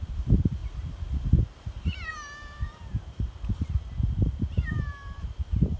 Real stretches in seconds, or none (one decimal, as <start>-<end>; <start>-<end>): none